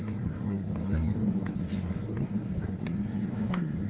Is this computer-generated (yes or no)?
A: yes